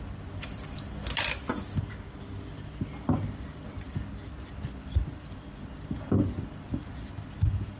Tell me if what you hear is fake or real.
real